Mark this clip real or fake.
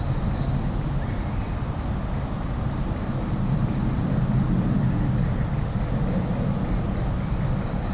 real